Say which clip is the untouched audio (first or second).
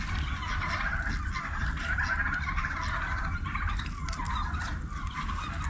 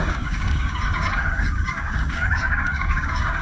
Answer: first